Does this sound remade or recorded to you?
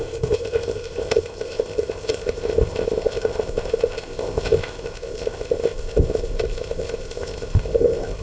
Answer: remade